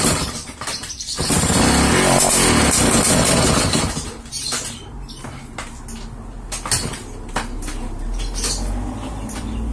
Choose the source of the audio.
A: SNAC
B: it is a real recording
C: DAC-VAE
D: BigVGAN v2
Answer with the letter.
B